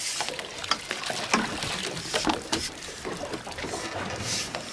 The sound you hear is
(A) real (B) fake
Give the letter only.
A